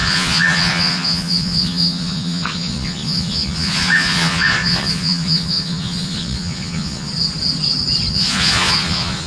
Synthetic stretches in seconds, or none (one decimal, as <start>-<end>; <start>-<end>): 0.0-7.1; 8.1-9.3